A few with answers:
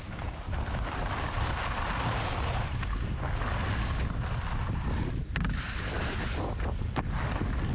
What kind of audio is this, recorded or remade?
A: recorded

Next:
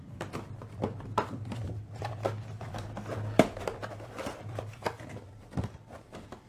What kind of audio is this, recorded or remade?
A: remade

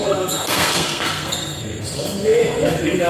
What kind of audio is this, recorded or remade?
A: remade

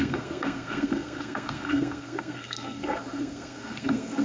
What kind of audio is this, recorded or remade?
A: remade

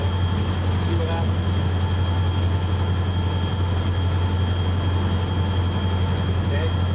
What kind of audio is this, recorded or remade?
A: recorded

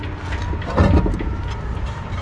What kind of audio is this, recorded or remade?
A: recorded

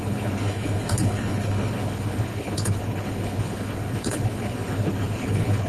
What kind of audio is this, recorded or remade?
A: remade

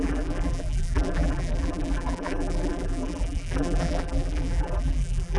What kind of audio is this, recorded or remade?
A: remade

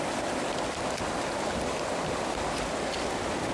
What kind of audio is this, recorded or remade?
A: recorded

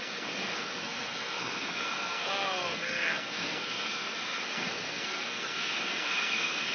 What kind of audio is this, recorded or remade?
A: remade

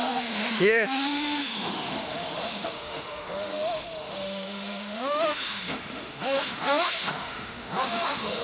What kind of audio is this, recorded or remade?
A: remade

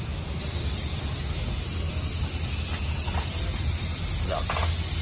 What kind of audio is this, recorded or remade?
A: recorded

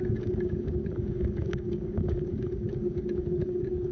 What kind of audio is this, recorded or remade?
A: remade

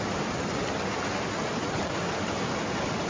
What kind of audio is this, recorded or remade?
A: recorded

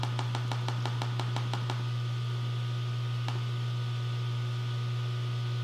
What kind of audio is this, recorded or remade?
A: recorded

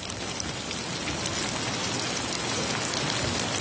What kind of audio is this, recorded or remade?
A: recorded